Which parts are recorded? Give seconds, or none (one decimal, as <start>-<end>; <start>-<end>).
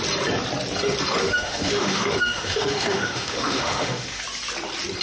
0.0-1.2; 4.2-5.0